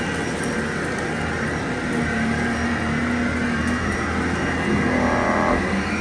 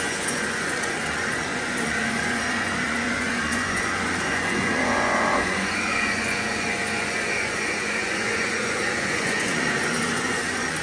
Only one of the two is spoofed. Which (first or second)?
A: second